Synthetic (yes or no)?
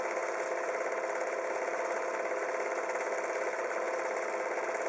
no